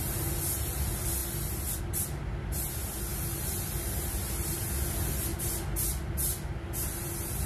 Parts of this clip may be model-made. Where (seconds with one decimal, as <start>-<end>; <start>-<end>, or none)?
none